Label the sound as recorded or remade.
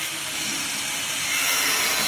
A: recorded